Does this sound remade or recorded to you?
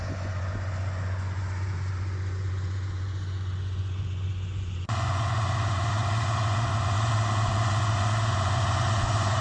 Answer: remade